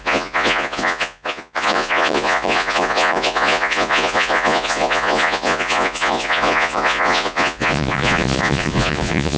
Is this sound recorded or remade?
remade